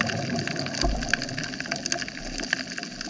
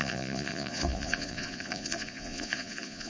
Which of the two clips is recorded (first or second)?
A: first